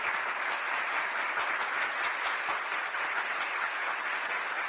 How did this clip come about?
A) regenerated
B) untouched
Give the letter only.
B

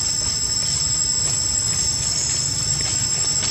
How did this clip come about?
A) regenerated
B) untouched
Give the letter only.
B